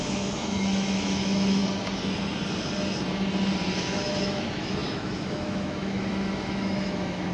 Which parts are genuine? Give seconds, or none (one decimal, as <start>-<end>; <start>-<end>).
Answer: 1.6-3.9